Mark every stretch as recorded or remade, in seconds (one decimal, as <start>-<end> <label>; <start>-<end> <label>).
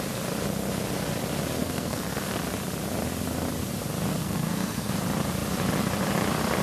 0.0-1.6 recorded; 1.6-2.3 remade; 2.3-4.1 recorded; 4.1-4.9 remade; 4.9-6.6 recorded